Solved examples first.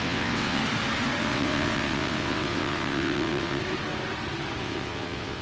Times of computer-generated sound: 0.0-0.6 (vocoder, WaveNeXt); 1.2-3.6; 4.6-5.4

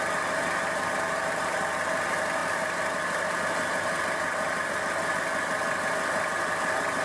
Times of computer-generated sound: none

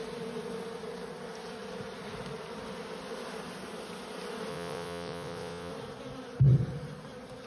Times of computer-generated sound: 4.5-5.7 (vocoder, WaveNeXt)